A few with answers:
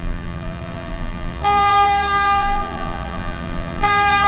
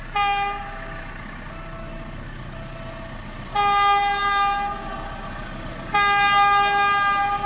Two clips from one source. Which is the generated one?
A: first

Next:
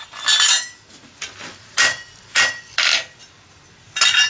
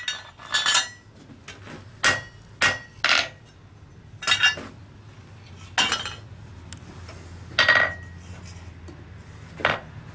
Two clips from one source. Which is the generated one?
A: first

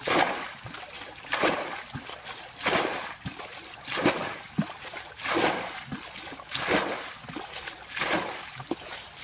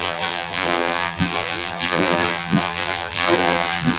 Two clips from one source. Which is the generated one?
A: second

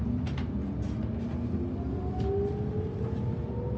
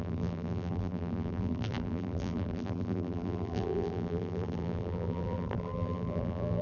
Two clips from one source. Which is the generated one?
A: second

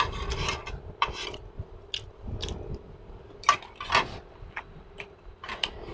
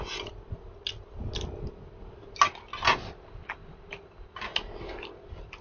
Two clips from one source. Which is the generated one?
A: first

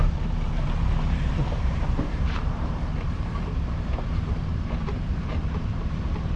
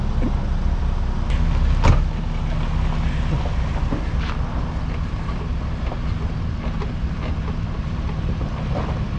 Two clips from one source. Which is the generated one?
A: first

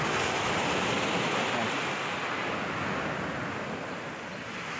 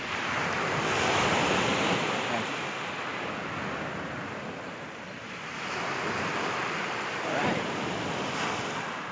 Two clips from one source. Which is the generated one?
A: second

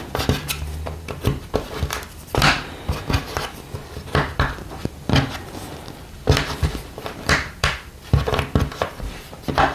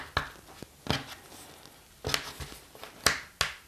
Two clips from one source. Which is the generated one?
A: first